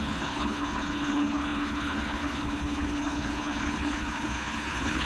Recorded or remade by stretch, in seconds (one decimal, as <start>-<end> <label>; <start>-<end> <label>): 0.0-5.1 remade